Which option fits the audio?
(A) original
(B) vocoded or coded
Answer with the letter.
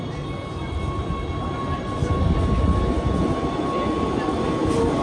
A